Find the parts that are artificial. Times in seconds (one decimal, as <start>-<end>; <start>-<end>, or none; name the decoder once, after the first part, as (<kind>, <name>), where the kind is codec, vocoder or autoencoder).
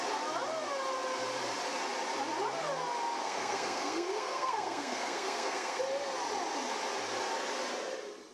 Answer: 3.2-5.8 (codec, SNAC)